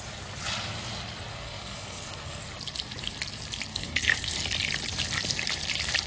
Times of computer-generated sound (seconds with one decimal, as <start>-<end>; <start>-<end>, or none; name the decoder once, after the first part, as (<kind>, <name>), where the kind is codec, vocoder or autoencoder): 1.3-2.4 (codec, SNAC); 3.7-4.4